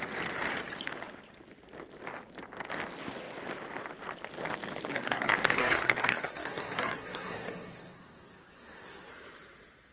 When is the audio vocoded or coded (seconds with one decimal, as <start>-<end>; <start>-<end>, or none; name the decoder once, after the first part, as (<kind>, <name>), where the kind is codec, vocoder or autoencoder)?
4.9-9.1 (codec, SNAC)